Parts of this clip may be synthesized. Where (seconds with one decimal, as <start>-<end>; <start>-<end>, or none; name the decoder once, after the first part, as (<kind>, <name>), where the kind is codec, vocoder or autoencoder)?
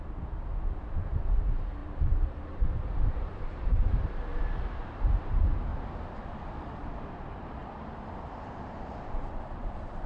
0.0-4.3 (vocoder, BigVGAN v2); 5.3-5.7; 7.1-7.6; 8.2-10.1